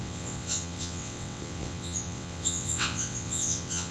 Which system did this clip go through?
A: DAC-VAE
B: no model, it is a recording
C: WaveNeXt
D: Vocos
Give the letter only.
C